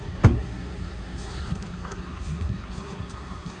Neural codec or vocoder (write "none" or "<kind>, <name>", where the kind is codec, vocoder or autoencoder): codec, SNAC